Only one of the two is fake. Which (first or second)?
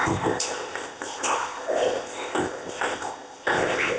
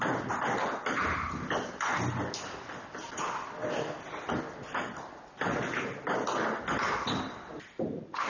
first